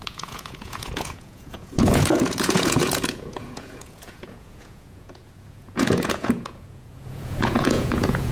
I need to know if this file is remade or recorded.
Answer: remade